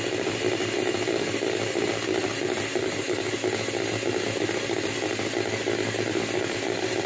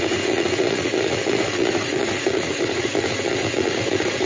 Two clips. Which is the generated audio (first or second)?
second